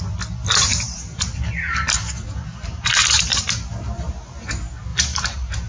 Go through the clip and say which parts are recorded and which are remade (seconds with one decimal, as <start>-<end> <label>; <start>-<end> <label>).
0.0-0.7 recorded; 0.7-4.1 remade; 4.1-4.9 recorded; 4.9-5.7 remade